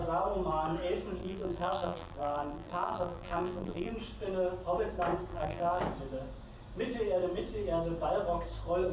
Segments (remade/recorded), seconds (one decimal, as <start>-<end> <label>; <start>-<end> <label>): 0.0-1.2 recorded; 1.2-3.9 remade; 3.9-5.3 recorded; 5.3-5.8 remade; 5.8-8.9 recorded